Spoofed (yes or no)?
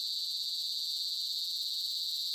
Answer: no